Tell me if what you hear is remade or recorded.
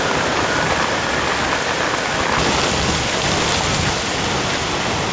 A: recorded